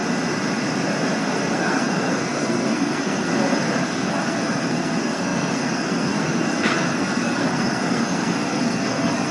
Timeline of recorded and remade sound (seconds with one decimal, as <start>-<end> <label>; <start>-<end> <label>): 0.0-1.2 recorded; 1.2-3.3 remade; 3.3-3.8 recorded; 3.8-9.3 remade